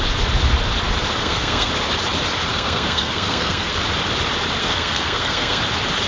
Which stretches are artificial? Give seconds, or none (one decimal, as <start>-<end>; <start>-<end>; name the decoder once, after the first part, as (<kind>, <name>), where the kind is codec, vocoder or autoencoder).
1.2-1.7 (codec, SNAC); 2.5-3.7; 4.6-5.6